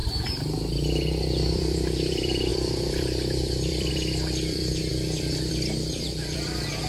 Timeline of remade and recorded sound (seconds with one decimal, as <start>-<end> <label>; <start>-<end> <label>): 0.0-6.9 remade